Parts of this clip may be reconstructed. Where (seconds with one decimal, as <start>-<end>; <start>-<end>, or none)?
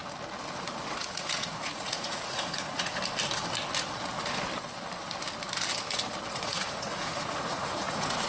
0.9-2.9; 6.3-8.3